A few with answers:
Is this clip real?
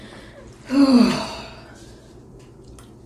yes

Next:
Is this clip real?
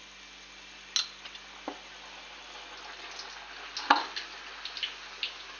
yes